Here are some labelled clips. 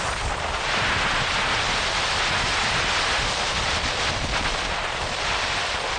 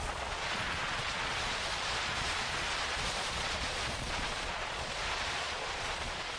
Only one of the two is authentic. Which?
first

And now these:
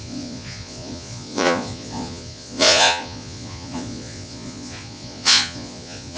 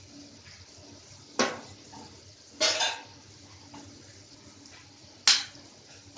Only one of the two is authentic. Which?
second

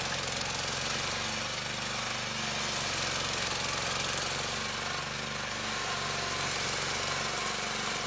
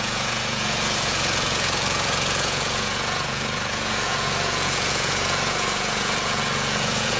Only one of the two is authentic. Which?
first